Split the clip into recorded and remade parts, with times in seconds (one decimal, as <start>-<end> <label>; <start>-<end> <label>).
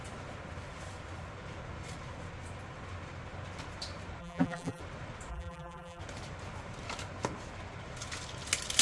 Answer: 0.0-4.2 recorded; 4.2-4.8 remade; 4.8-5.3 recorded; 5.3-6.0 remade; 6.0-8.8 recorded